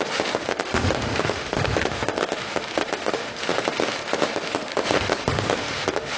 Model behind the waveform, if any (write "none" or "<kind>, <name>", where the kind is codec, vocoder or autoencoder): autoencoder, DAC-VAE